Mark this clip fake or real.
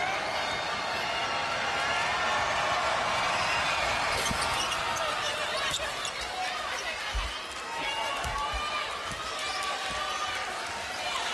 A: real